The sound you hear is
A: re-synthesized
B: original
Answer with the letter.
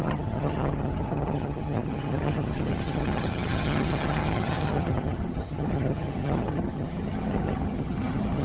A